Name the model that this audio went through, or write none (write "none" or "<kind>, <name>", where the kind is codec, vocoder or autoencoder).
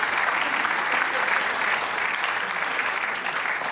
none